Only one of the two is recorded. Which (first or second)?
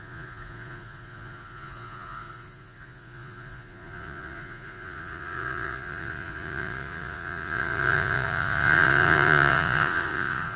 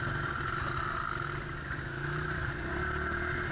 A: second